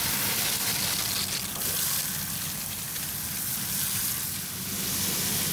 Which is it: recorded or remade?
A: recorded